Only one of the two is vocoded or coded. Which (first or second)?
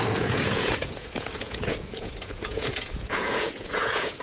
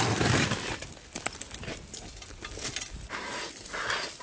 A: first